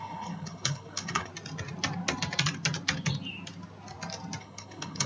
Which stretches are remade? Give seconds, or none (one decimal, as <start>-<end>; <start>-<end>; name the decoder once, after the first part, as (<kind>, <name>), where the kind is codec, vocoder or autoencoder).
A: 0.0-1.3 (codec, HILCodec); 4.4-5.1

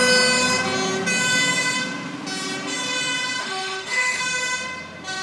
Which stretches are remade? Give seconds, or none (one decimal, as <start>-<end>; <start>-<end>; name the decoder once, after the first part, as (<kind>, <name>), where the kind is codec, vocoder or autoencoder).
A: 3.4-4.2 (autoencoder, DAC-VAE)